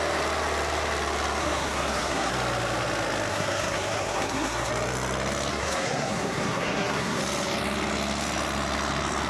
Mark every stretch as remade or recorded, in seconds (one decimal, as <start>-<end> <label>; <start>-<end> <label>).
0.0-1.4 recorded; 1.4-2.3 remade; 2.3-3.3 recorded; 3.3-4.7 remade; 4.7-5.5 recorded; 5.5-7.2 remade; 7.2-9.3 recorded